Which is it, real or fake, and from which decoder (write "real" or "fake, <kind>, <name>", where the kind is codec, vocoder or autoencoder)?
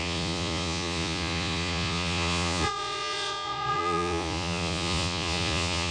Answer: fake, vocoder, Vocos